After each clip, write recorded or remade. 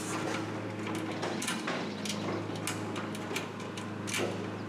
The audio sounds recorded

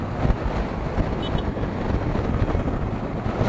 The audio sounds recorded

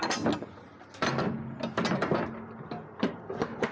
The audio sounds recorded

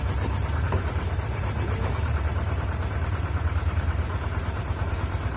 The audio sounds remade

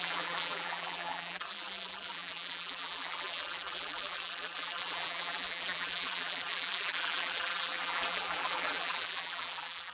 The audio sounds remade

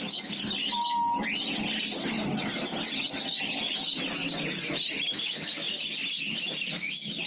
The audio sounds recorded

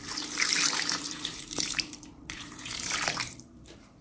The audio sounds remade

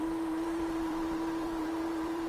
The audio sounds remade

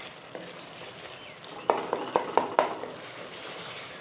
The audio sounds recorded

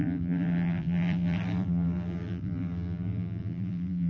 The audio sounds remade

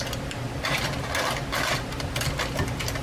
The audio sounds recorded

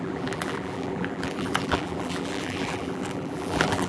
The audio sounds remade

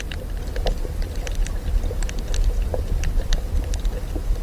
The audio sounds remade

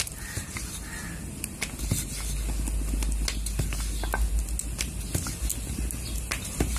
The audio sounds recorded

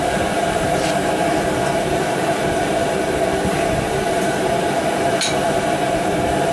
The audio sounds remade